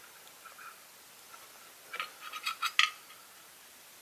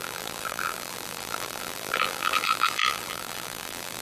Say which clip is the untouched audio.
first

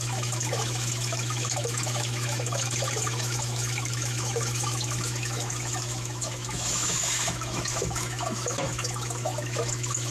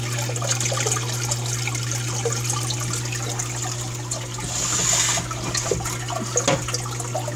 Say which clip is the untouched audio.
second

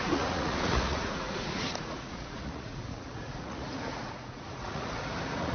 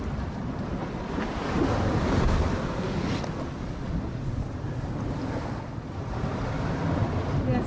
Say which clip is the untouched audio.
second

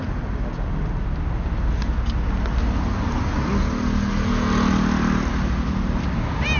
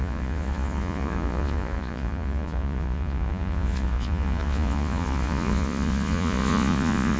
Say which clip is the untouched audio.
first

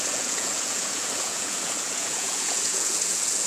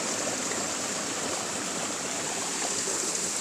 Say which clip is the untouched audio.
second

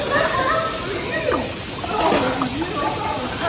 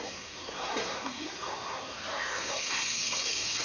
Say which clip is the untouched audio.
first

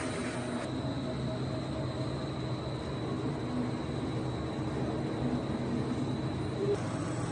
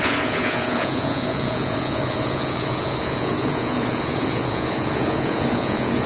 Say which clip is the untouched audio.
first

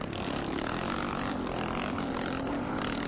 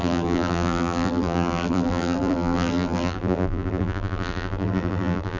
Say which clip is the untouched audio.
first